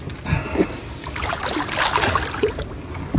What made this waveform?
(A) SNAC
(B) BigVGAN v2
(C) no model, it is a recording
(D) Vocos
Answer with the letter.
C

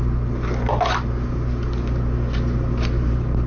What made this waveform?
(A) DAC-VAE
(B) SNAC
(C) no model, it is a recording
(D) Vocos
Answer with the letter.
C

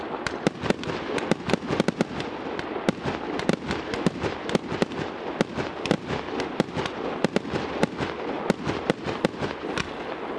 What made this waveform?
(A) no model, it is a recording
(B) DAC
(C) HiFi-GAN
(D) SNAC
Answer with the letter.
A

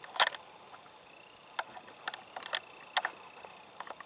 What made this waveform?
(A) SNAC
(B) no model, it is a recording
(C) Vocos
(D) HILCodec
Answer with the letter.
B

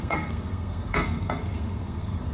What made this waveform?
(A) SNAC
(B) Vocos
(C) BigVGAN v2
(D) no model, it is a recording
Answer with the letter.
A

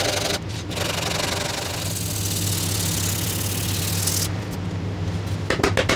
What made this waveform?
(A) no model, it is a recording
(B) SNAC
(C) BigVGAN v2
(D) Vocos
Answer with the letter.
A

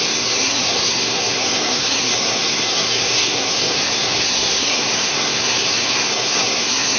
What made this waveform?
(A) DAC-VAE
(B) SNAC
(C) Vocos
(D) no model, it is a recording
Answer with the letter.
B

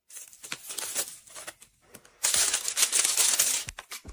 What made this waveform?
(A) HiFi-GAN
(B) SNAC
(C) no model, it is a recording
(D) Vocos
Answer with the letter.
C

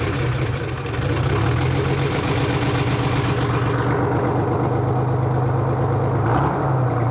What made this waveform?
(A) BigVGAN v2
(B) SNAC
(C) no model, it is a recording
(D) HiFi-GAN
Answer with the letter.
C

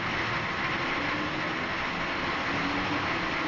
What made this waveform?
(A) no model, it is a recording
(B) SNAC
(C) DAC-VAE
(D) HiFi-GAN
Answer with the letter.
A